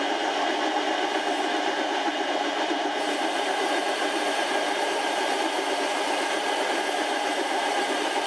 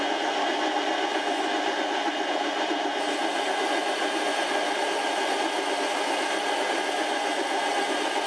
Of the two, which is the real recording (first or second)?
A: second